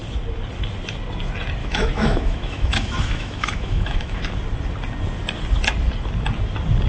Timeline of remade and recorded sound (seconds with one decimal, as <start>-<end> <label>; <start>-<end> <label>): 0.0-1.6 recorded; 1.6-4.2 remade; 4.2-6.9 recorded